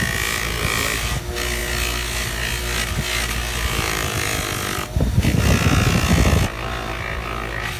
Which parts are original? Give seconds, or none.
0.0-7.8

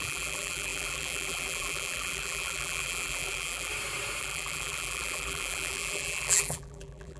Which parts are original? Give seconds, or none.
3.7-4.2

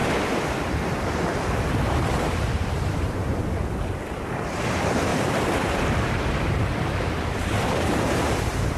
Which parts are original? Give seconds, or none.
0.0-1.0; 3.2-4.1